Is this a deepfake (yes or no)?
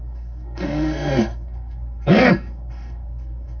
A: yes